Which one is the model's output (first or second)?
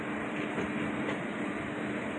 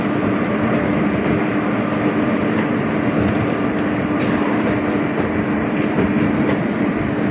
second